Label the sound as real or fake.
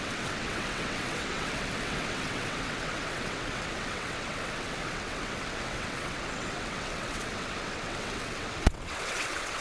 fake